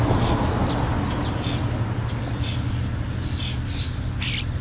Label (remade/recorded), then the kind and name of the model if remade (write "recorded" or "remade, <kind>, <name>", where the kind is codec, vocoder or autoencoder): recorded